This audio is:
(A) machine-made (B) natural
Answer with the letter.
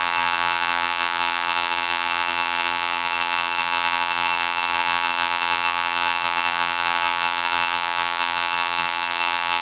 A